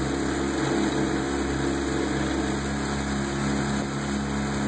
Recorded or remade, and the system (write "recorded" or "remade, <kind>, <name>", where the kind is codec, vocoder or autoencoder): recorded